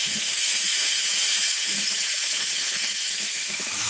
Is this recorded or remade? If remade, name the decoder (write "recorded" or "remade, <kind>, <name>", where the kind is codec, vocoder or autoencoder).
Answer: remade, autoencoder, DAC-VAE